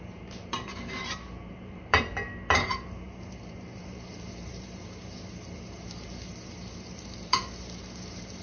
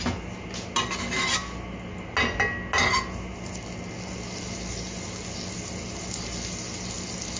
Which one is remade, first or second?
first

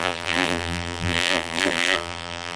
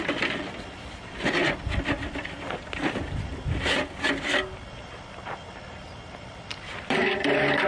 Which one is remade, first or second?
first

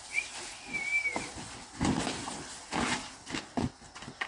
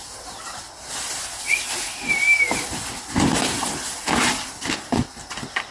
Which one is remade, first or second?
second